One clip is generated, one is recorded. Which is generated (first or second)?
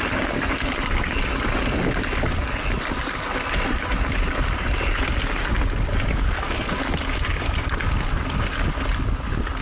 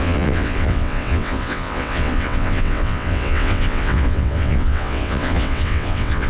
second